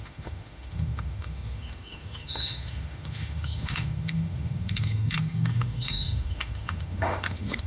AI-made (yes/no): yes